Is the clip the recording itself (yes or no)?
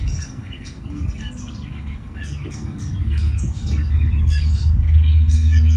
no